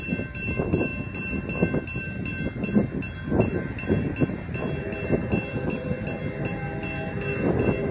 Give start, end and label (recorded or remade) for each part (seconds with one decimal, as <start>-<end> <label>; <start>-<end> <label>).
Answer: 0.0-7.9 recorded